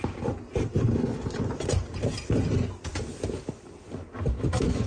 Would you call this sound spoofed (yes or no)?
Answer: no